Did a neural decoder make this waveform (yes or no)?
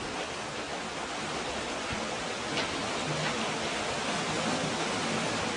no